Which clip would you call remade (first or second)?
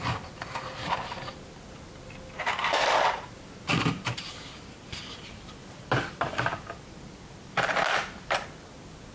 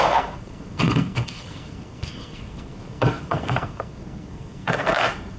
second